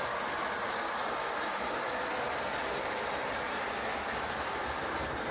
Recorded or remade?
recorded